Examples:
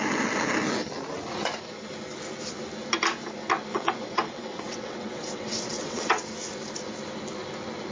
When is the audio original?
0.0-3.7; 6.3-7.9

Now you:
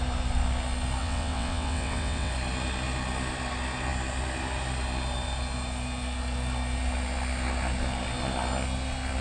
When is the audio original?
0.0-1.0; 2.3-9.2